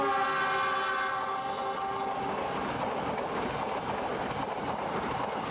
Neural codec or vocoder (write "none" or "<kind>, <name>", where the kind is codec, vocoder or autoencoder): none